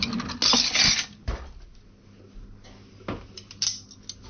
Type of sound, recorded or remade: recorded